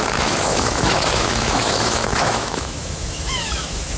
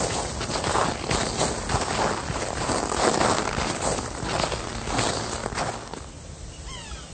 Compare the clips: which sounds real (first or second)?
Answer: second